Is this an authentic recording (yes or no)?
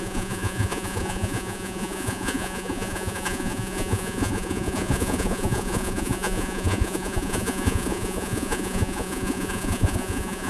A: no